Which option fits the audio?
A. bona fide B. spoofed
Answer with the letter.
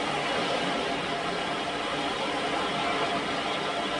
A